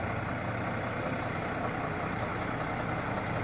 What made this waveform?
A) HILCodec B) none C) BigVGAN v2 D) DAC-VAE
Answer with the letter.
B